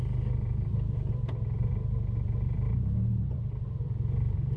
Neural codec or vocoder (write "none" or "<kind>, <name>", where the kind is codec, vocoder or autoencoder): vocoder, BigVGAN v2